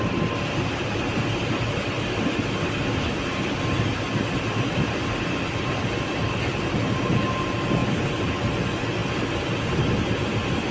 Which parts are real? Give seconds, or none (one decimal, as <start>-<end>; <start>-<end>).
0.0-10.7